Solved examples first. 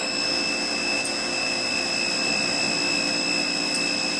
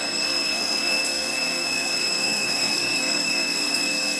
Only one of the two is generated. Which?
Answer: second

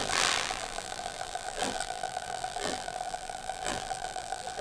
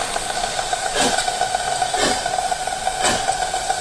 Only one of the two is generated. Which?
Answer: first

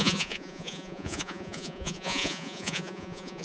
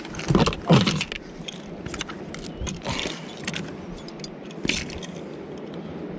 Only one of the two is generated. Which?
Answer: first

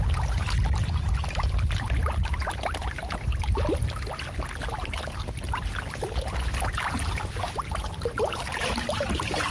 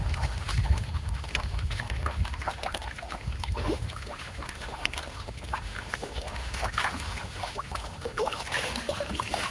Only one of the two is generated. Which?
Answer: second